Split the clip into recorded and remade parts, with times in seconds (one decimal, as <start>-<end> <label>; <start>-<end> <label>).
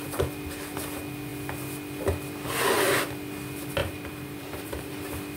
0.0-3.8 recorded; 3.8-4.9 remade; 4.9-5.4 recorded